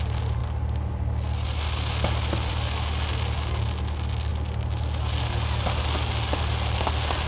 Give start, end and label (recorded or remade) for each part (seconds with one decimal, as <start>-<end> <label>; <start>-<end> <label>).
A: 0.0-7.3 recorded